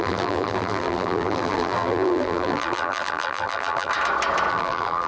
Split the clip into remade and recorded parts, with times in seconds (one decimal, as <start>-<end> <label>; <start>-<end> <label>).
0.0-3.9 remade; 3.9-4.5 recorded; 4.5-5.1 remade